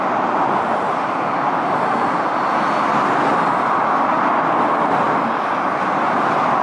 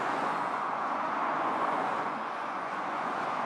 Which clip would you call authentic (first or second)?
first